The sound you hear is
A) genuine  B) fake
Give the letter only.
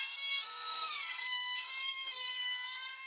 B